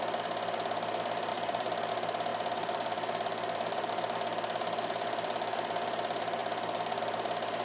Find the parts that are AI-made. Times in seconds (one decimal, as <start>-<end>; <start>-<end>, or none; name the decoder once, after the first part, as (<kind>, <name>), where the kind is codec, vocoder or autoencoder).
1.3-1.9 (vocoder, BigVGAN v2); 2.3-3.9; 6.4-7.0